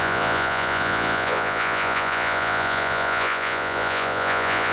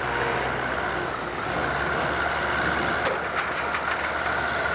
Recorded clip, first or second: second